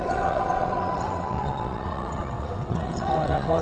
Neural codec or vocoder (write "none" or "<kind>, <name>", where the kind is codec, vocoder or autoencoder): vocoder, WaveNeXt